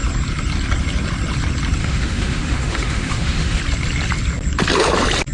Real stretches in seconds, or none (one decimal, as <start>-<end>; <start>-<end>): 0.0-1.8; 3.6-5.3